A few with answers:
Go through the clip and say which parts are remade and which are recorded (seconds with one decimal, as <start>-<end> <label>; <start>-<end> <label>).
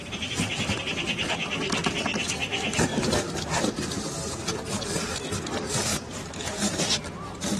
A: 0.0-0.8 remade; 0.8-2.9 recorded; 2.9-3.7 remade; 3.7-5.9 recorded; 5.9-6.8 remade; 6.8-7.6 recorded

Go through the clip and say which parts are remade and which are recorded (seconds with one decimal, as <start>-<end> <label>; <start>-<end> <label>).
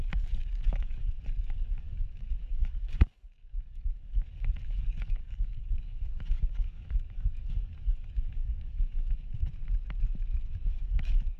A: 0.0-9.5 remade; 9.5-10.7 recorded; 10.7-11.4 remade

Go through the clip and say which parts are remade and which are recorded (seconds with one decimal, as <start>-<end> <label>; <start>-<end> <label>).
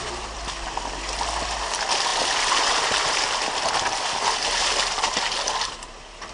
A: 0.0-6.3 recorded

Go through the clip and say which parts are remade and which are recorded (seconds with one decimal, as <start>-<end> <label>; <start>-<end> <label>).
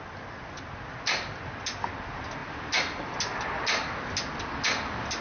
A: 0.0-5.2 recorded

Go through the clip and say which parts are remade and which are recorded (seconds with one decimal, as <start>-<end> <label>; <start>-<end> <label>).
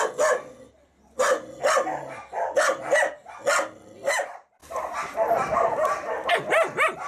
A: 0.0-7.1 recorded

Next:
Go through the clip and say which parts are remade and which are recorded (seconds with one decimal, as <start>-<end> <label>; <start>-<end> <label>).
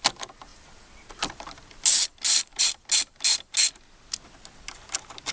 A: 0.0-5.3 recorded